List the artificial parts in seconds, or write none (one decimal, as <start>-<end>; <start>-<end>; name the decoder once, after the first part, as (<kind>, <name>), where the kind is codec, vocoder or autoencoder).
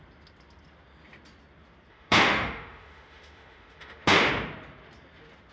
1.9-4.3 (autoencoder, DAC-VAE)